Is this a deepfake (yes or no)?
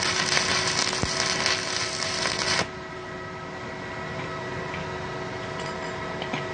no